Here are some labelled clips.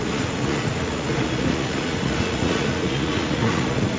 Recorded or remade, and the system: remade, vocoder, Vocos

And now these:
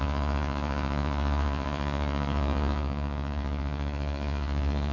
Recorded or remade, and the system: remade, vocoder, Vocos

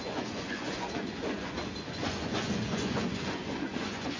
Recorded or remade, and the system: remade, vocoder, Vocos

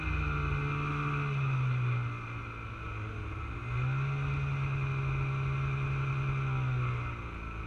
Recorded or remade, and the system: recorded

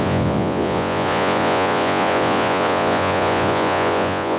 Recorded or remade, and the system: remade, vocoder, Vocos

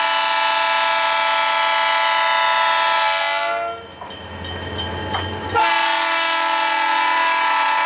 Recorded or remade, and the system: recorded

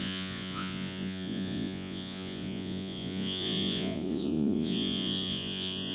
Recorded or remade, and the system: remade, vocoder, Vocos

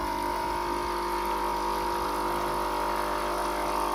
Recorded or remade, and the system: recorded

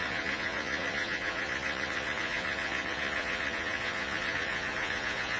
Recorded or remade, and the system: remade, vocoder, Vocos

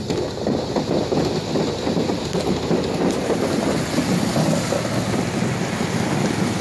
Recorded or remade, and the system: recorded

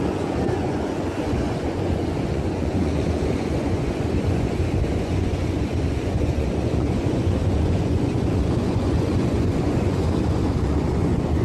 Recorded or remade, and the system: remade, vocoder, Vocos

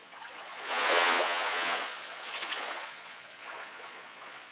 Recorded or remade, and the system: remade, vocoder, Vocos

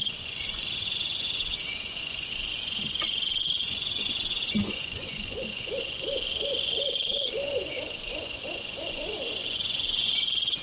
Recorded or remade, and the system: remade, vocoder, Vocos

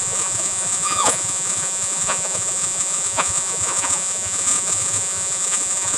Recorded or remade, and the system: remade, vocoder, Vocos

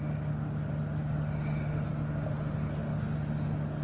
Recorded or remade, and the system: recorded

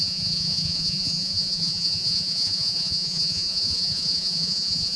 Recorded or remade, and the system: remade, vocoder, Vocos